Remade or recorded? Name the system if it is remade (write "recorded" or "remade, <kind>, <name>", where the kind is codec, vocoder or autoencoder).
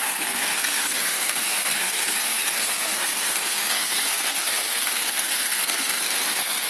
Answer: remade, codec, SNAC